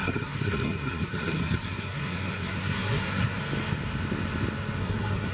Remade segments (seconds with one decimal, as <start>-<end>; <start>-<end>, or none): 0.0-3.4; 4.8-5.3